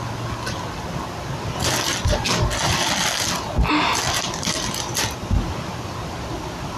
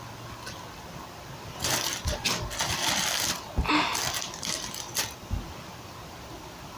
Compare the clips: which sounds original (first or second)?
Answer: first